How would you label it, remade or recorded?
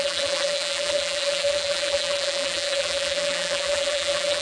remade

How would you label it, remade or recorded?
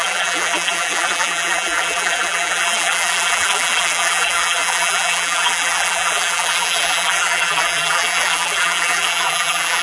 remade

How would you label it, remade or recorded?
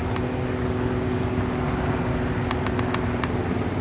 recorded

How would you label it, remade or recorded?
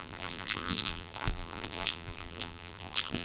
remade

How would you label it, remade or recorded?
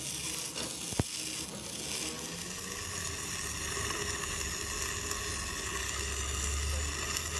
recorded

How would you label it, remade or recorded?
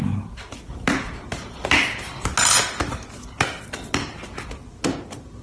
recorded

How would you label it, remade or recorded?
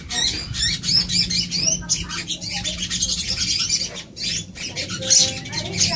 recorded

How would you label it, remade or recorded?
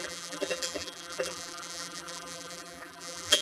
remade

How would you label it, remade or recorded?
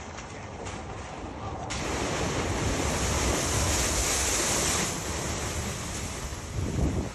remade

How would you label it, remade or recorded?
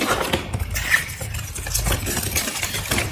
remade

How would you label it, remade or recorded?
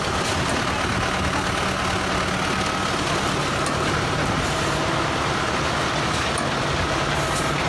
recorded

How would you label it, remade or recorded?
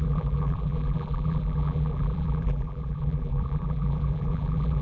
remade